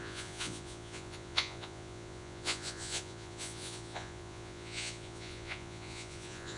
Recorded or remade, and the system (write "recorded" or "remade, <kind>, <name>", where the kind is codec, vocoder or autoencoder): remade, vocoder, Vocos